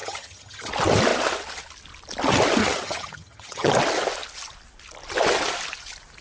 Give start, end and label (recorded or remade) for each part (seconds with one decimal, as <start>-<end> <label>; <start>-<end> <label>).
0.0-0.7 remade; 0.7-2.6 recorded; 2.6-3.7 remade; 3.7-6.2 recorded